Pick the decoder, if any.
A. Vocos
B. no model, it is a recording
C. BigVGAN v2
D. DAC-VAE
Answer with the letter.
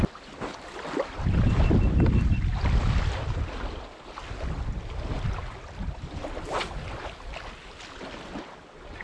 B